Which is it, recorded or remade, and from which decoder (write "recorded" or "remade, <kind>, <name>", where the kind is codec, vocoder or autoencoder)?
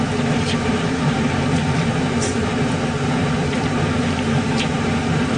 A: remade, vocoder, BigVGAN v2